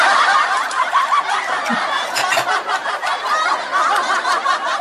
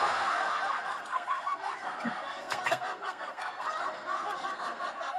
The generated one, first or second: second